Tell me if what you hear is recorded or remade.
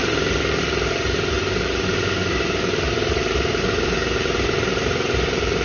remade